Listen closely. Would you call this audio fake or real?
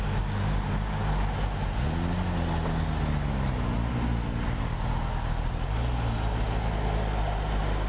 real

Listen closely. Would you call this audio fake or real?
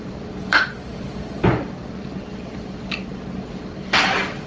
fake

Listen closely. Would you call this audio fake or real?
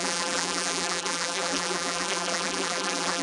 fake